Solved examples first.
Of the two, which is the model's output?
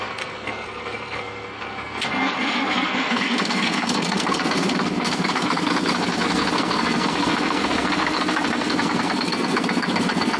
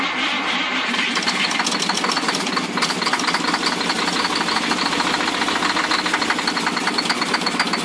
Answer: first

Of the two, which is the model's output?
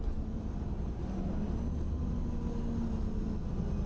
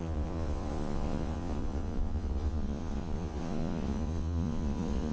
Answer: second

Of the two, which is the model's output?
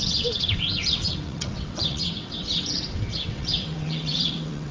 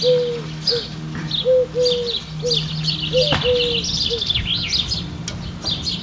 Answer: first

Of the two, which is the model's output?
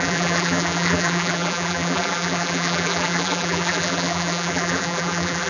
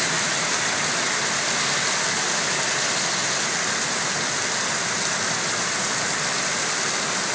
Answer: first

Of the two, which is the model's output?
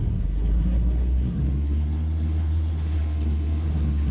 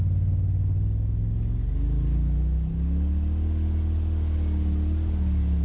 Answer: first